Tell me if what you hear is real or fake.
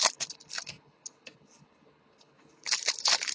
fake